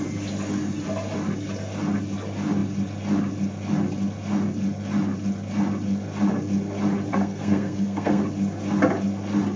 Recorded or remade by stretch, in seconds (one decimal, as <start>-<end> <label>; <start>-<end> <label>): 0.0-7.1 recorded; 7.1-8.2 remade; 8.2-9.6 recorded